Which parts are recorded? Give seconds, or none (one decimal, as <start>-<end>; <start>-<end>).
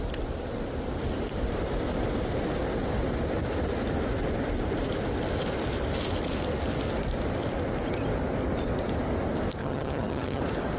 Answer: 0.0-9.6; 10.4-10.8